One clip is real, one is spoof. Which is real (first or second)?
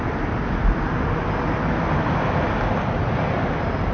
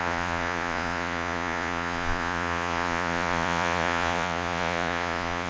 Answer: first